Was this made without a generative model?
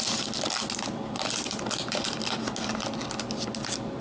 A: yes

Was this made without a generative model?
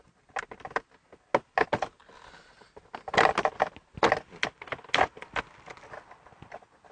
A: yes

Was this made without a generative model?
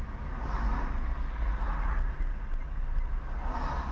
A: yes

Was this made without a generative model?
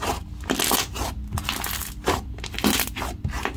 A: yes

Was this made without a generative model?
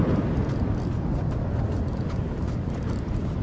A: yes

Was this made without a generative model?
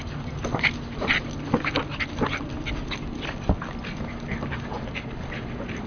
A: yes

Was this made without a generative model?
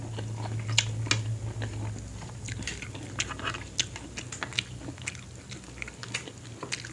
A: yes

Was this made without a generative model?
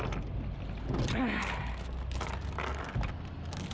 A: yes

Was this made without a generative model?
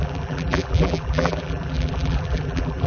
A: no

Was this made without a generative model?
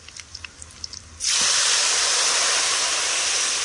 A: yes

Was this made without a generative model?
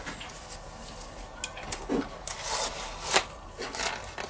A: yes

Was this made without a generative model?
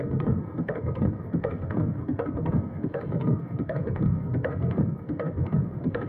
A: no